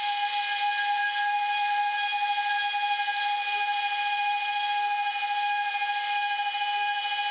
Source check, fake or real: real